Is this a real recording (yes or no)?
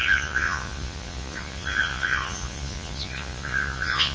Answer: no